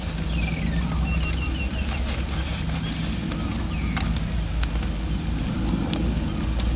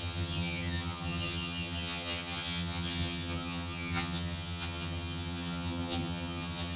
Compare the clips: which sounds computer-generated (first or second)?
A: second